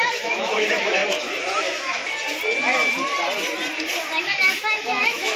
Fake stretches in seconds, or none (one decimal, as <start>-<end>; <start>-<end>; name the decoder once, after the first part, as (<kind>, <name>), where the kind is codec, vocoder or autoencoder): 0.0-1.0 (autoencoder, DAC-VAE); 1.6-2.0; 4.2-5.4